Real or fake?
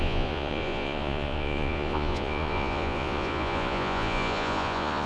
fake